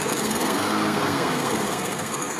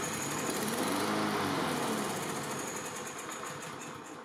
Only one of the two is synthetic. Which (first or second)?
first